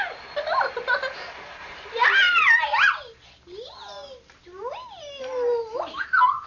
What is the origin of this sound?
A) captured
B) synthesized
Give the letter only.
A